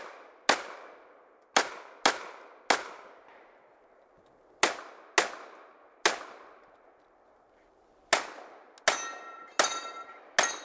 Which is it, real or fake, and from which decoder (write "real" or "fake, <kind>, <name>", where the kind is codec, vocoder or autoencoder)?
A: real